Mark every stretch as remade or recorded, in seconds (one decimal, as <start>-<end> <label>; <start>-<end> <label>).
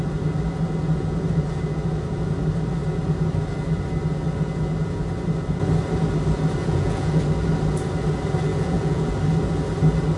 0.0-6.6 recorded; 6.6-7.2 remade; 7.2-8.5 recorded; 8.5-9.1 remade; 9.1-10.2 recorded